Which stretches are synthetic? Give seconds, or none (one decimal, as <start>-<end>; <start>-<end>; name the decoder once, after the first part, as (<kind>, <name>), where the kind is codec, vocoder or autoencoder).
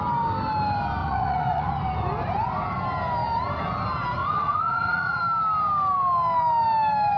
1.0-1.7 (vocoder, Vocos); 4.2-5.2